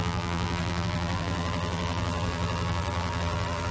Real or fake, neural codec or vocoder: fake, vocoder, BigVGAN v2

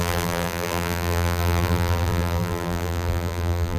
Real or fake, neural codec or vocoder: fake, vocoder, BigVGAN v2